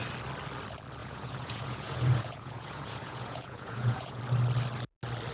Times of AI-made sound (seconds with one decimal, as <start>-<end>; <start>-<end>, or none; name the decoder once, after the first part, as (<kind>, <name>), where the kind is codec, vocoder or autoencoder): 1.0-4.2 (vocoder, Vocos)